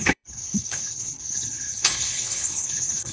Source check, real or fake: fake